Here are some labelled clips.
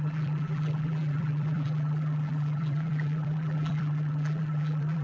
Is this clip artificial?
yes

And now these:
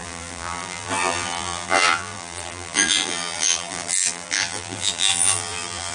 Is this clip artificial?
yes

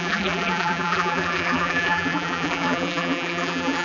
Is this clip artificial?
yes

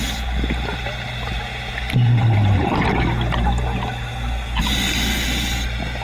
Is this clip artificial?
no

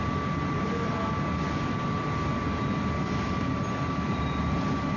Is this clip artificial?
no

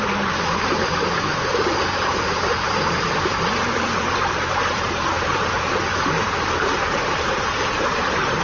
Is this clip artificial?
yes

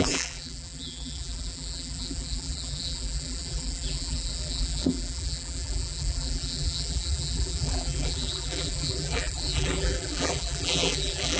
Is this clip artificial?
yes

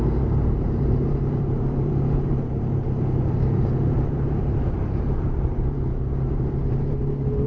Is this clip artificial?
yes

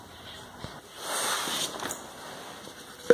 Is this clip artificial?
no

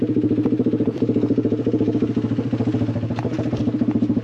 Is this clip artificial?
no